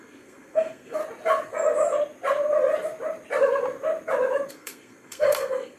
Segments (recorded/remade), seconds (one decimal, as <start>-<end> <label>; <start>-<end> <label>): 0.0-1.0 remade; 1.0-4.5 recorded; 4.5-5.8 remade